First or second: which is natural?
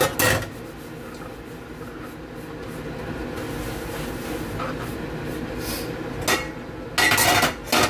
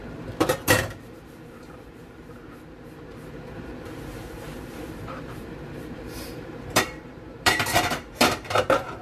first